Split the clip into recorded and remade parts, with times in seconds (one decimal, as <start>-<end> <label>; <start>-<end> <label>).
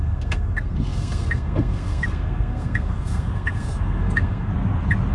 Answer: 0.0-4.5 remade; 4.5-5.1 recorded